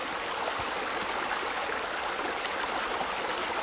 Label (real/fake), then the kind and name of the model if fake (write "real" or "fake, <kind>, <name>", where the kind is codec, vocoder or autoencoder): real